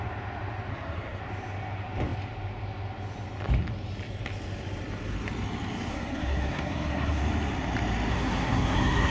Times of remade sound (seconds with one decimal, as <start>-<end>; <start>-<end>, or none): 0.7-1.2; 5.9-7.2; 8.1-9.1